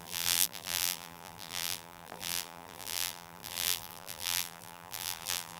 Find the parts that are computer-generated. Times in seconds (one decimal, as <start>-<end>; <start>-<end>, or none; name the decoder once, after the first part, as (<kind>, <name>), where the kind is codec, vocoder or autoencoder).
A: 0.0-5.6 (vocoder, BigVGAN v2)